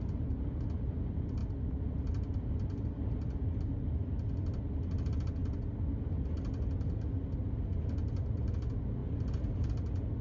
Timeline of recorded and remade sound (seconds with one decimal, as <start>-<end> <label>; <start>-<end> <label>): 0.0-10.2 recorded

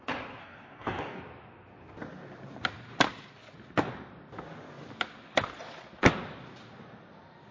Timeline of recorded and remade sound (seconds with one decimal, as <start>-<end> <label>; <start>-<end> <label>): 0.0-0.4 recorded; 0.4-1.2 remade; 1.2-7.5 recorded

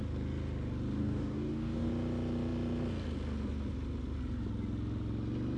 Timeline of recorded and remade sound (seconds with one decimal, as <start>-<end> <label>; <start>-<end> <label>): 0.0-1.0 recorded; 1.0-1.9 remade; 1.9-5.6 recorded

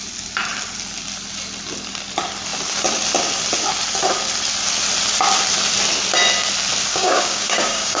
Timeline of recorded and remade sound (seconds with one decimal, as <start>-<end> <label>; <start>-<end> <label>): 0.0-6.9 recorded; 6.9-8.0 remade

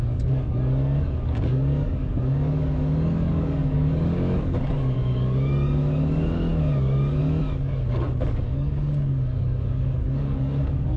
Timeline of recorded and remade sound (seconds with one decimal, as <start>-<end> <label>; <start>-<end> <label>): 0.0-11.0 remade

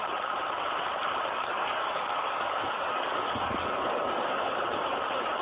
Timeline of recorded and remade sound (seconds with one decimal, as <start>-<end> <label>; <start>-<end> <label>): 0.0-1.5 recorded; 1.5-4.7 remade; 4.7-5.4 recorded

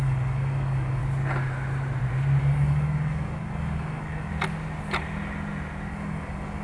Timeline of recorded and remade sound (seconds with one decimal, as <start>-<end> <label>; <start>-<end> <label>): 0.0-1.0 remade; 1.0-2.4 recorded; 2.4-4.3 remade; 4.3-5.9 recorded; 5.9-6.6 remade